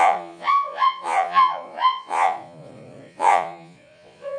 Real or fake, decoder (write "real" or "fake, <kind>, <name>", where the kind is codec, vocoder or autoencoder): fake, vocoder, Vocos